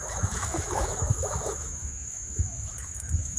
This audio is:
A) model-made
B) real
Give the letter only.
A